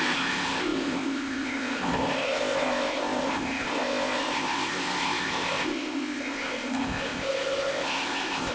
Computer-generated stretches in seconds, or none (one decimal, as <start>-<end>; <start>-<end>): 0.0-8.5